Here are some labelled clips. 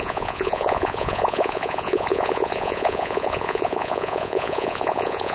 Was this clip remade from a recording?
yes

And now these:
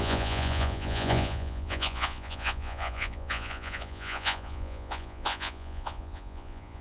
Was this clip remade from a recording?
yes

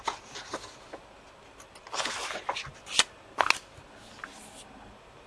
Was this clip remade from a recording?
no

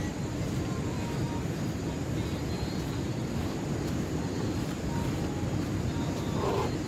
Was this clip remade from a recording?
no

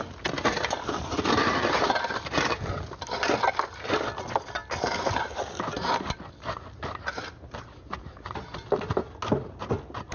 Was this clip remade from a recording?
no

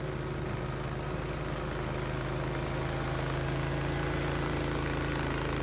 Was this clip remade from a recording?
no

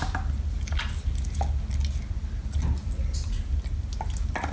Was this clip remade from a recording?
no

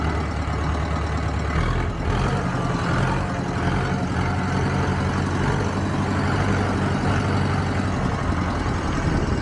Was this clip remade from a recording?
no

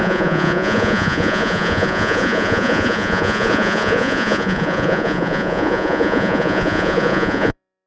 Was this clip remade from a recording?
yes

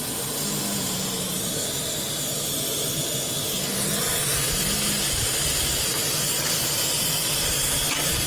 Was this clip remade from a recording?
no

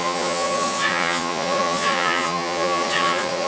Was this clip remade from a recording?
yes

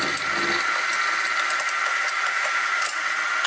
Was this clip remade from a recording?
no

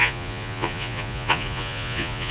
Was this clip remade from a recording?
yes